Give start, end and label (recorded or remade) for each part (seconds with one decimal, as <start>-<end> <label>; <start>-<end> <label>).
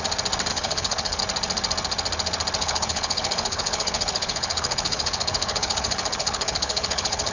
0.0-0.5 recorded; 0.5-1.2 remade; 1.2-2.6 recorded; 2.6-7.3 remade